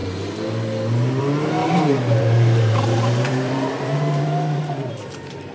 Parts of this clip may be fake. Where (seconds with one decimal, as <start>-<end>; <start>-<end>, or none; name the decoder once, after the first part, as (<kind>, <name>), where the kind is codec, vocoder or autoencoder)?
1.6-4.9 (vocoder, BigVGAN v2)